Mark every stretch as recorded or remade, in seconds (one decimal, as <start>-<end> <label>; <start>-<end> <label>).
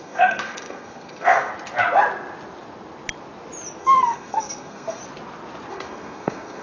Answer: 0.0-1.5 remade; 1.5-3.8 recorded; 3.8-5.0 remade; 5.0-5.7 recorded; 5.7-6.6 remade